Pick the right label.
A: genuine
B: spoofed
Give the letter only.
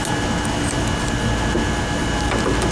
A